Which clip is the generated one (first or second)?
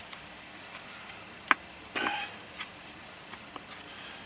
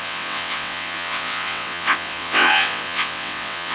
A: second